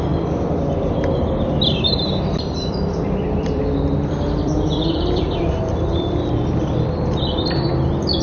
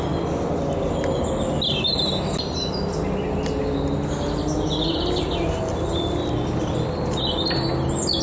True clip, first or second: second